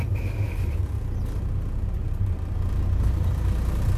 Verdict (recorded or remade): recorded